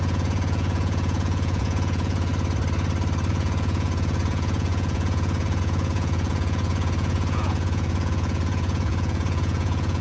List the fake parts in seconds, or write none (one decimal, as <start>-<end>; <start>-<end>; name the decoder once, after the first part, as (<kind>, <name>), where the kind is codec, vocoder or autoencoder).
0.0-2.3 (vocoder, Vocos); 3.3-10.0